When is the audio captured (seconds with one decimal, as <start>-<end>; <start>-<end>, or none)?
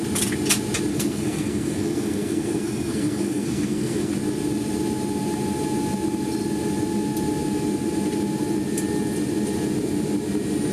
0.0-0.9; 4.1-10.7